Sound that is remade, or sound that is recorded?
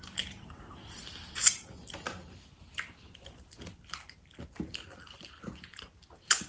recorded